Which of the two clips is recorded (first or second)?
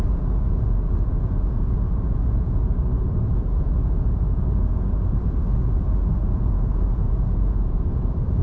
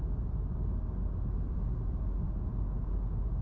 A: second